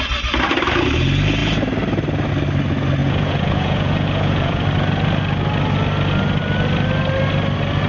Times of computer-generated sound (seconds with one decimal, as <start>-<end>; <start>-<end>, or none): 3.0-4.6